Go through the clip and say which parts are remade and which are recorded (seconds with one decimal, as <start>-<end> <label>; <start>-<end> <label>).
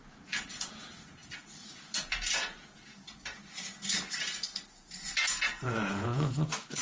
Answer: 0.0-6.8 remade